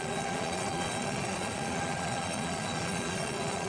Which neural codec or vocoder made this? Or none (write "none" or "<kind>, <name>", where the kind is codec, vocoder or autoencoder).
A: vocoder, Vocos